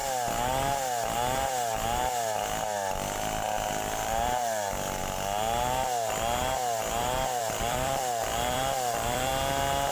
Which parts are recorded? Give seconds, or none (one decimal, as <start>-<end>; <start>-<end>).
0.0-3.7; 5.0-7.4; 9.3-9.9